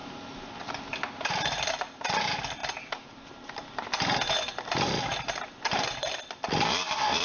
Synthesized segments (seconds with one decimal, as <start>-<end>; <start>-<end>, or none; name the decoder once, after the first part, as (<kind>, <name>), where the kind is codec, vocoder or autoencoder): 0.0-7.2 (vocoder, BigVGAN v2)